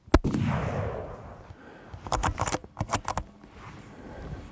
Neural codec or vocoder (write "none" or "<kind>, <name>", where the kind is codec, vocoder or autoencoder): none